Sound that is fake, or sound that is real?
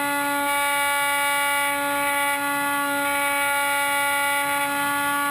real